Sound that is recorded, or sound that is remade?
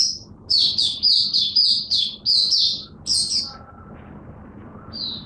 recorded